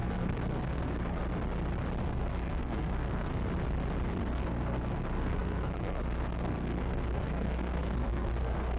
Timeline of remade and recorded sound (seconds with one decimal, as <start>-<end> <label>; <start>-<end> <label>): 0.0-1.3 remade; 1.3-2.0 recorded; 2.0-3.3 remade; 3.3-4.1 recorded; 4.1-8.8 remade